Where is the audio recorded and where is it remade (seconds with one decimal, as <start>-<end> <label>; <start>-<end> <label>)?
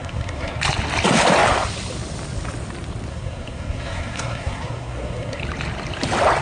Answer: 0.0-0.6 remade; 0.6-3.1 recorded; 3.1-5.4 remade; 5.4-6.4 recorded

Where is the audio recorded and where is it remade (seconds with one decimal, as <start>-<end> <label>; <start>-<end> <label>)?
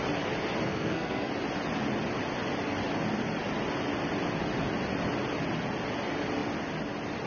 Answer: 0.0-0.7 recorded; 0.7-1.3 remade; 1.3-7.3 recorded